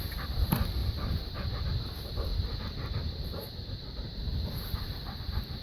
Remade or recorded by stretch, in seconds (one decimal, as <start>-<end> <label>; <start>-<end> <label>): 0.0-5.6 recorded